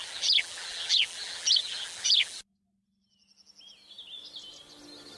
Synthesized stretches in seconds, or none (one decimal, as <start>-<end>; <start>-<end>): 0.0-2.4